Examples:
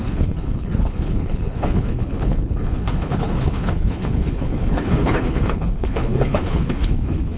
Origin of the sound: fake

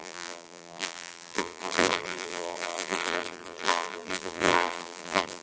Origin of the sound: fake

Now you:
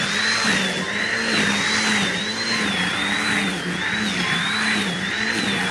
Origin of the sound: real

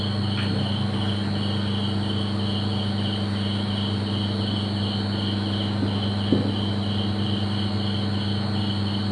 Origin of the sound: real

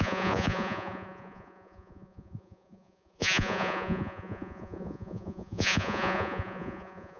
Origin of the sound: fake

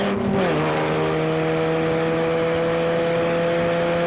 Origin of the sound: real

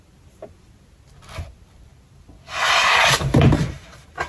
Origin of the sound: real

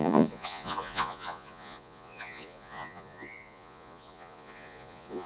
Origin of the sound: fake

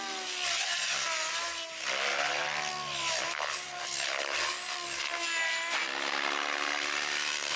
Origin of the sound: real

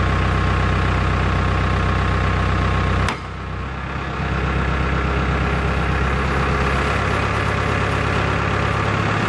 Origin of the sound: real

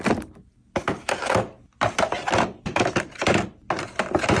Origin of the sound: real